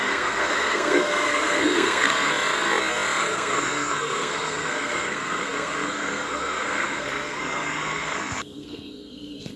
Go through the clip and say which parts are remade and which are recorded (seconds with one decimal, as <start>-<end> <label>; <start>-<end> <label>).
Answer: 0.0-2.3 remade; 2.3-3.2 recorded; 3.2-9.6 remade